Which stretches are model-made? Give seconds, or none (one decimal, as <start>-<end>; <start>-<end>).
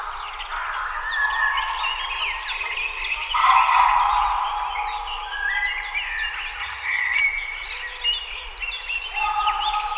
6.6-7.2